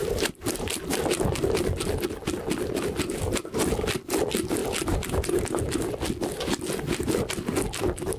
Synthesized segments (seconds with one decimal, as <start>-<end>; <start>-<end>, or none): 0.0-0.8